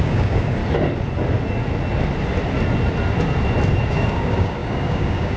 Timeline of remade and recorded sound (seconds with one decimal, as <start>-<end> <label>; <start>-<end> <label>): 0.0-0.6 remade; 0.6-3.8 recorded; 3.8-5.4 remade